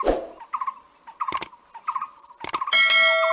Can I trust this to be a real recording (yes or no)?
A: yes